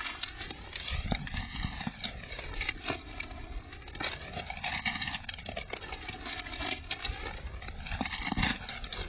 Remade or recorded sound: recorded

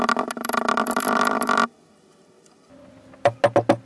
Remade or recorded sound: recorded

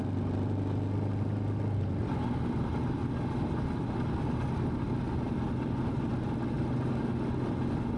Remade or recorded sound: recorded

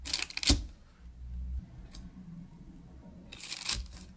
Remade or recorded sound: recorded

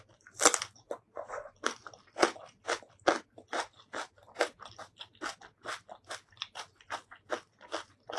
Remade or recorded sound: recorded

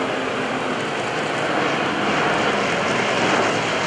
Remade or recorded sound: recorded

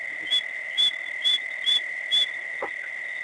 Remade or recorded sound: recorded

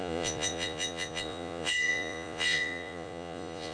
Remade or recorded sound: remade